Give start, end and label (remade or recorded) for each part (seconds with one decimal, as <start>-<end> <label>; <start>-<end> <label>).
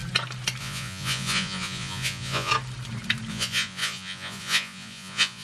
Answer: 0.0-0.6 recorded; 0.6-2.5 remade; 2.5-3.3 recorded; 3.3-5.4 remade